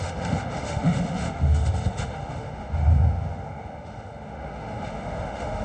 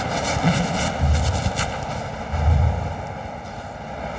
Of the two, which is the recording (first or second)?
second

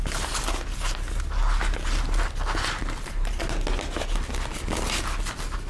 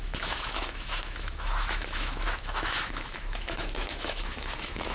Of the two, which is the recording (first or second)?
first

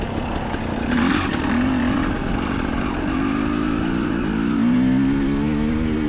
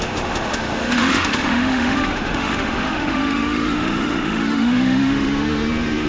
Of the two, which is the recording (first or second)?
first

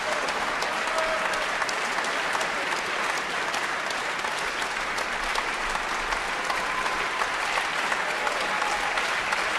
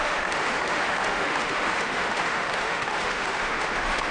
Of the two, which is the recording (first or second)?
first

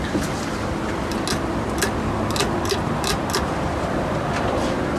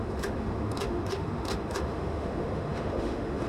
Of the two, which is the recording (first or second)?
first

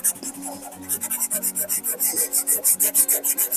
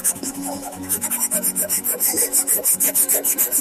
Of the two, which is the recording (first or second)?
first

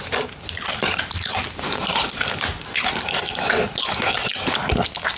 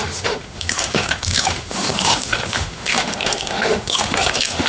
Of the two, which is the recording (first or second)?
first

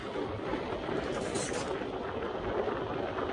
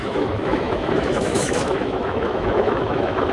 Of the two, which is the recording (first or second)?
first